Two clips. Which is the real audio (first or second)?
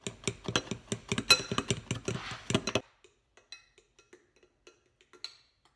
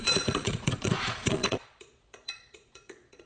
first